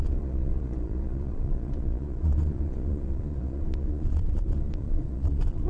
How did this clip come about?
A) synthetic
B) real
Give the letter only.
A